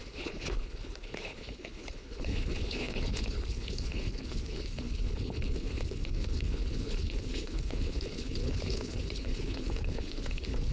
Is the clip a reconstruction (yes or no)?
yes